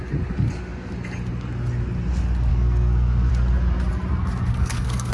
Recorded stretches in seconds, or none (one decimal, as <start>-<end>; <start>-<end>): 0.0-2.5; 3.3-4.5